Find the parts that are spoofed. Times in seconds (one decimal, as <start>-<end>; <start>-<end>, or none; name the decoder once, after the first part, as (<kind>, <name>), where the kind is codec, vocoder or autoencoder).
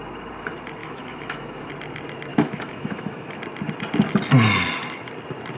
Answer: 0.8-1.7 (autoencoder, DAC-VAE); 2.3-3.4